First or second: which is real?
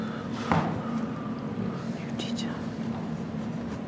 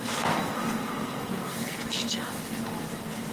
first